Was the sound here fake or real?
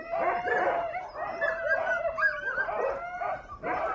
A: real